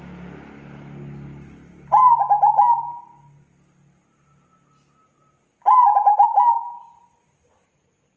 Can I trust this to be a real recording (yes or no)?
yes